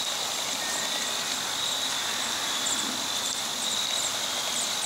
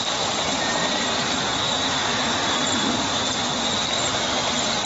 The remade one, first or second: second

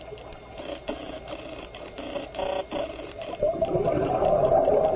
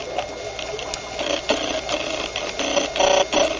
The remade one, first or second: first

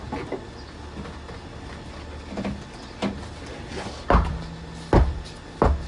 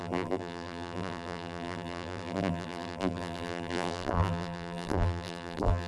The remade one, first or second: second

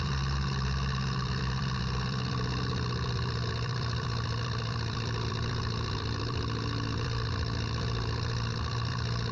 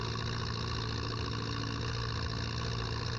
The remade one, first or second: first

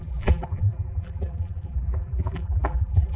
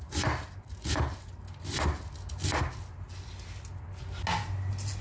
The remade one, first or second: first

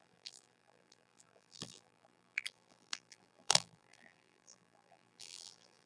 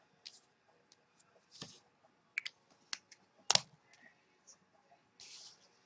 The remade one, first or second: first